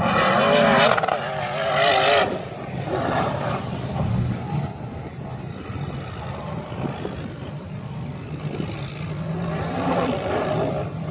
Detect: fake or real real